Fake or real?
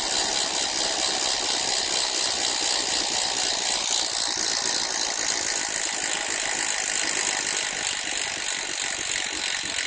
real